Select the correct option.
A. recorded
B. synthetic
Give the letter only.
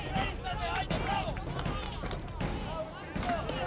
A